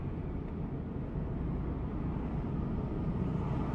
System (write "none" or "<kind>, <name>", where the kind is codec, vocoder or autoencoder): none